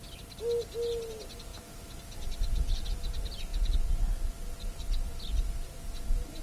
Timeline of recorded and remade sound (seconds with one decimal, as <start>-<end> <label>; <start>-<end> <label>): 0.0-1.5 recorded; 1.5-2.7 remade; 2.7-3.5 recorded; 3.5-4.3 remade; 4.3-6.4 recorded